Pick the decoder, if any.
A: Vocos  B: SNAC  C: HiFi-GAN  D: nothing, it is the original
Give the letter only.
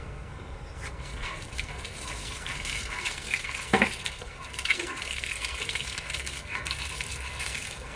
B